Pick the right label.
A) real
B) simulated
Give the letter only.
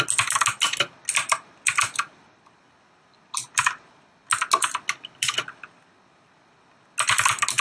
A